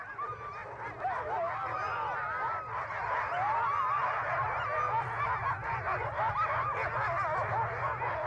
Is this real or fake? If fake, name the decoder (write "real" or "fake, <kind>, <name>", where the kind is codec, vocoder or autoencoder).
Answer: real